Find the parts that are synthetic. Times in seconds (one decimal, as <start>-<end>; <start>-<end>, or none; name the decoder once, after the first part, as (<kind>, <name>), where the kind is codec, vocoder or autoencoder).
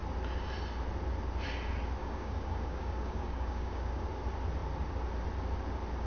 2.0-4.1 (codec, DAC)